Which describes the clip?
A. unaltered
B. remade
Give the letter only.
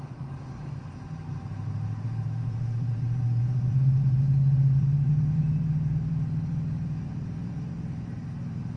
B